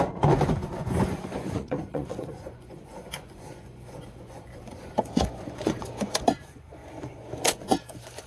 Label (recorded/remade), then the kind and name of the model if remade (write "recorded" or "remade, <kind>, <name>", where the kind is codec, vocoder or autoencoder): remade, vocoder, Vocos